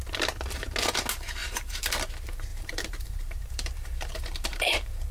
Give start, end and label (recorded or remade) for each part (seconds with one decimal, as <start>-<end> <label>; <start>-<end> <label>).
0.0-1.4 recorded; 1.4-1.9 remade; 1.9-2.5 recorded; 2.5-5.1 remade